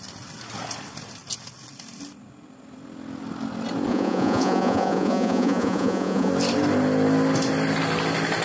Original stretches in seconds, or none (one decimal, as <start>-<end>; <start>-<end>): 0.0-3.9; 6.3-8.4